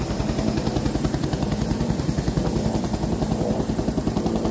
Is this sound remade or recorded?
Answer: remade